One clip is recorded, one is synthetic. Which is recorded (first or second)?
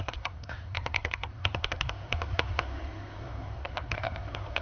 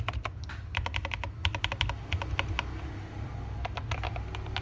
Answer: second